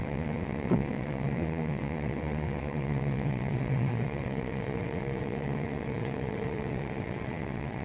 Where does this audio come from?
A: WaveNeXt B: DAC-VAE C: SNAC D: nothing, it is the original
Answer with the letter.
A